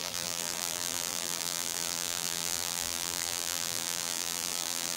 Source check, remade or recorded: remade